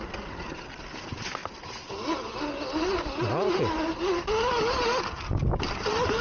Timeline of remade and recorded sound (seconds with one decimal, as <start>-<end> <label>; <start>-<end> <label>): 0.0-6.2 recorded